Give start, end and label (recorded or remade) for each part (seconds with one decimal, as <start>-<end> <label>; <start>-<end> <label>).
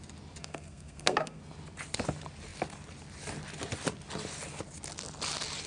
0.0-0.4 recorded; 0.4-1.4 remade; 1.4-5.7 recorded